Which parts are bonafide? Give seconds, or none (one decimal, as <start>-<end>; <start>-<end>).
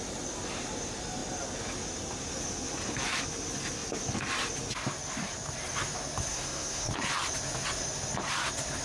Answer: 0.0-6.3; 6.9-8.8